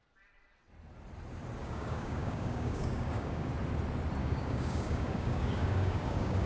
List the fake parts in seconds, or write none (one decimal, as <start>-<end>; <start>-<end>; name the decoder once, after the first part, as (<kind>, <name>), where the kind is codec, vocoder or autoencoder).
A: 1.6-3.5 (codec, DAC); 4.2-6.5

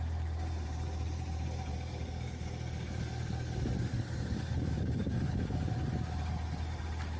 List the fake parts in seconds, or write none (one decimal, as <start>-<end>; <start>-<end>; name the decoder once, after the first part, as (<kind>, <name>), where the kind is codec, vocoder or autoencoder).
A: 1.7-5.7 (codec, DAC)

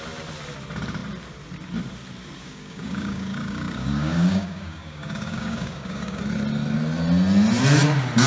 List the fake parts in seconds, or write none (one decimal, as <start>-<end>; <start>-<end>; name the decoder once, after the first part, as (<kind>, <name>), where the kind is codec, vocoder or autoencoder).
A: 2.4-6.2 (codec, DAC)

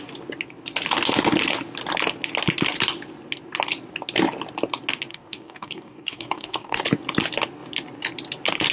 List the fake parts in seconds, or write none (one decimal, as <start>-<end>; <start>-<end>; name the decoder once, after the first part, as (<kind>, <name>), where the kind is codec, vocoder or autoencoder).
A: 5.1-6.8 (codec, DAC)

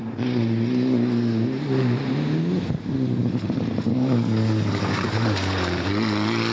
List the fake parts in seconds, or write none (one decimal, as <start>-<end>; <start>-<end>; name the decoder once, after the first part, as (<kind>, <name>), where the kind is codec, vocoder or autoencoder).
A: 3.9-5.9 (codec, DAC)